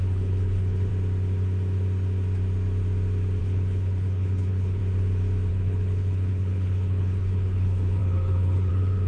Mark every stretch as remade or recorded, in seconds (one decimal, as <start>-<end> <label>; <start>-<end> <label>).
0.0-0.9 remade; 0.9-3.4 recorded; 3.4-4.8 remade; 4.8-5.5 recorded; 5.5-9.1 remade